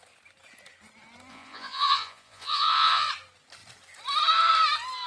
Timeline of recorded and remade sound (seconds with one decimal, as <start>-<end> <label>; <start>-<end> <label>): 0.0-1.3 recorded; 1.3-3.1 remade; 3.1-5.1 recorded